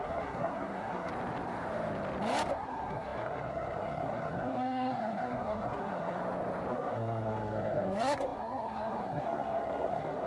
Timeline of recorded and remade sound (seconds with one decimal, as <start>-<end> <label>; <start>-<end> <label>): 0.0-1.1 remade; 1.1-2.5 recorded; 2.5-6.2 remade; 6.2-6.7 recorded; 6.7-10.3 remade